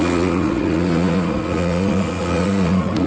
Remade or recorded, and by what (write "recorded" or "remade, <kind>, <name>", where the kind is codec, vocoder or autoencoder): remade, vocoder, Vocos